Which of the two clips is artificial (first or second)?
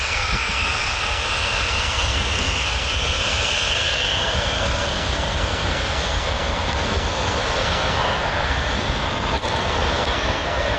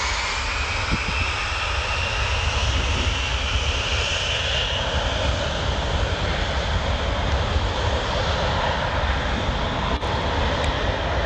first